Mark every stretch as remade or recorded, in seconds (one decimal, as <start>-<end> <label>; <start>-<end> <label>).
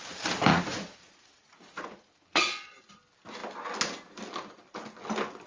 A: 0.0-0.5 recorded; 0.5-2.9 remade; 2.9-5.5 recorded